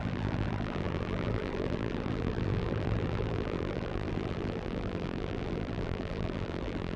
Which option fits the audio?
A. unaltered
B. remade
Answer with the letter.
B